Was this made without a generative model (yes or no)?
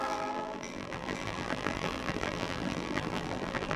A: no